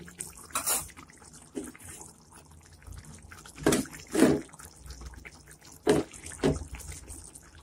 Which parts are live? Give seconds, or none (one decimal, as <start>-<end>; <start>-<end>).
0.0-0.8; 2.4-7.6

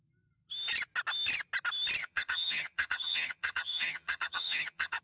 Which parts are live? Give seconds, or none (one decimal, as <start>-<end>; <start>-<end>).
0.0-2.0